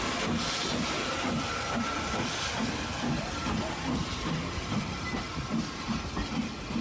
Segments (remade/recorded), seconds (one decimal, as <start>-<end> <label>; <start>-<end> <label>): 0.0-3.4 recorded; 3.4-4.7 remade; 4.7-6.8 recorded